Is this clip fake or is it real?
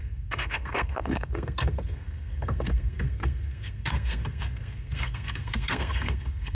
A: fake